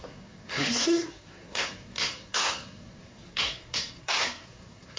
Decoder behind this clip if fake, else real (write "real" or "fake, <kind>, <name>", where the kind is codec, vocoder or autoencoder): fake, codec, SNAC